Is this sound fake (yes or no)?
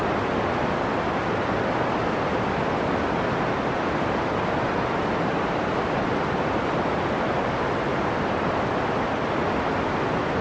no